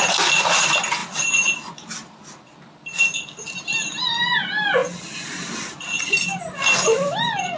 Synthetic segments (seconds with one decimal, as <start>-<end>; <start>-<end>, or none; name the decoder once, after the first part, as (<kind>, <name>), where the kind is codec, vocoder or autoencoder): none